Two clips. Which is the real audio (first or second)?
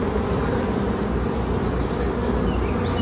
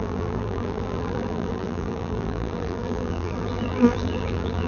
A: first